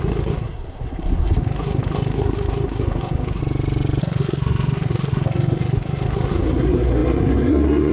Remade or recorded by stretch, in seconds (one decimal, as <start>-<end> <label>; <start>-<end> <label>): 0.0-3.4 remade; 3.4-4.0 recorded; 4.0-7.9 remade